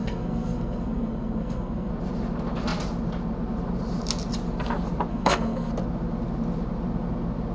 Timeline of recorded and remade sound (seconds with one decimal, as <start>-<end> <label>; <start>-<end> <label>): 0.0-1.9 remade; 1.9-5.1 recorded; 5.1-5.7 remade; 5.7-7.5 recorded